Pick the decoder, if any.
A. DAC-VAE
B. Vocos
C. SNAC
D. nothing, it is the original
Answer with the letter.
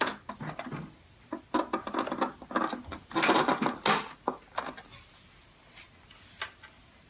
D